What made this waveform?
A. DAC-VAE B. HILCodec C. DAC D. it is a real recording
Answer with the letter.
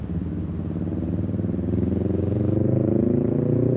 D